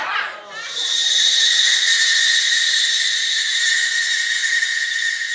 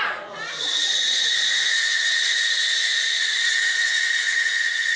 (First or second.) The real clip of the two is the first